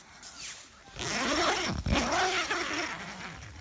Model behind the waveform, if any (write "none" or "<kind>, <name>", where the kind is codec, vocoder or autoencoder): none